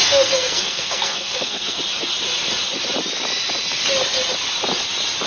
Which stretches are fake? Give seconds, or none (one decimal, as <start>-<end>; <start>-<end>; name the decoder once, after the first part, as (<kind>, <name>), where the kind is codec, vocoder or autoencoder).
0.0-1.8 (codec, SNAC)